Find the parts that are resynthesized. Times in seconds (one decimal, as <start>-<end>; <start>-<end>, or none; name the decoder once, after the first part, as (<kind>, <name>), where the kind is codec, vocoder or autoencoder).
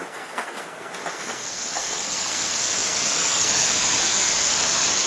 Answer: 0.0-5.1 (codec, SNAC)